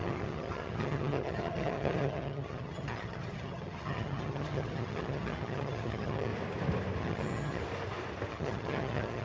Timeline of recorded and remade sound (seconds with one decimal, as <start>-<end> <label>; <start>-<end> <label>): 0.0-6.3 remade; 6.3-7.0 recorded; 7.0-7.6 remade; 7.6-8.3 recorded; 8.3-9.2 remade

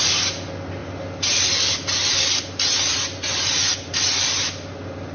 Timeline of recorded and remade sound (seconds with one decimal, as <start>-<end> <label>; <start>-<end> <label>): 0.0-5.1 recorded

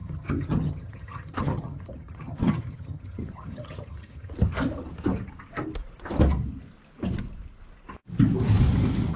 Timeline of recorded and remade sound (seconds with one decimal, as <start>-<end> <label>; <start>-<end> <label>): 0.0-4.3 remade; 4.3-9.2 recorded

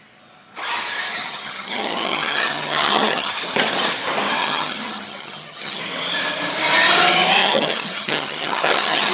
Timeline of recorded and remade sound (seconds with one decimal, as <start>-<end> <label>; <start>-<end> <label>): 0.0-1.2 recorded; 1.2-3.3 remade; 3.3-4.4 recorded; 4.4-5.8 remade; 5.8-7.4 recorded; 7.4-9.1 remade

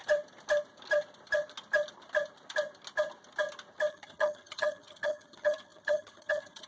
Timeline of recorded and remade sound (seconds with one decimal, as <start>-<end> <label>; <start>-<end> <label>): 0.0-3.9 recorded; 3.9-6.7 remade

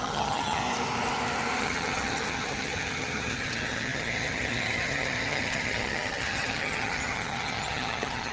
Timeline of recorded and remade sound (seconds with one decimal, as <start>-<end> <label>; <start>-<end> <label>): 0.0-0.6 remade; 0.6-1.6 recorded; 1.6-8.3 remade